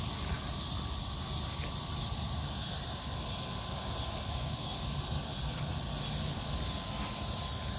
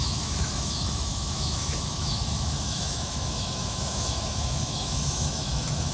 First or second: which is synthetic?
second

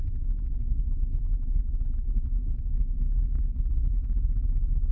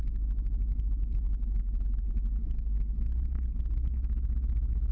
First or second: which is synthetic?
first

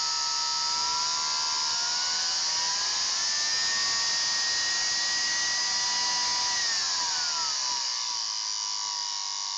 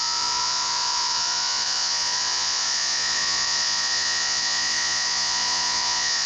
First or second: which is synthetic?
second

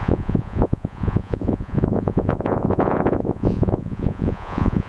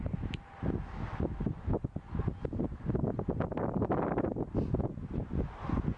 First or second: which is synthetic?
first